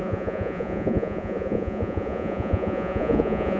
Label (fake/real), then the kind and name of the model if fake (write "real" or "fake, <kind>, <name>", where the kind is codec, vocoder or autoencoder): fake, vocoder, Vocos